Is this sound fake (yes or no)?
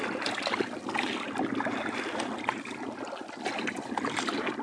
no